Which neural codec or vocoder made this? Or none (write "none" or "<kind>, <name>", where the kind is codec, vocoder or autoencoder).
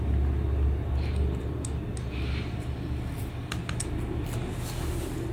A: none